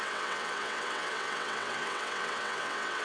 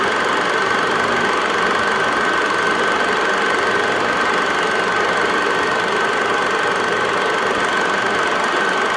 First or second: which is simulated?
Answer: first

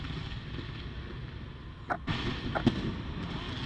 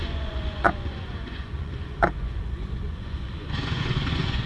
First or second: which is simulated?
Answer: second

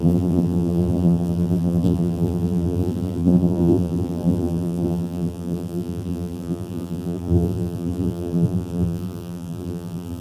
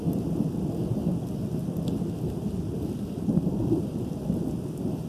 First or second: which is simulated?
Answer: first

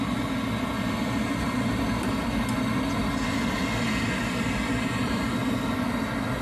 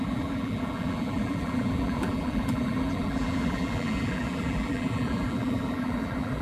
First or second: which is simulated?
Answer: second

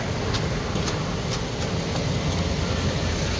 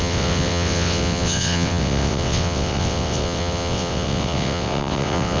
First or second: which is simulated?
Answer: second